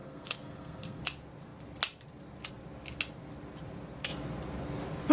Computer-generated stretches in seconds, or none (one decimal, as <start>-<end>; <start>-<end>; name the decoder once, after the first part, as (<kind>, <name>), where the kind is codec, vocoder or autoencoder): 0.0-1.0 (codec, SNAC)